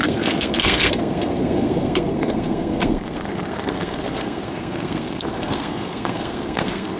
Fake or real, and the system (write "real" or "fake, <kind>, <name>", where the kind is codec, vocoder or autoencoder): fake, codec, SNAC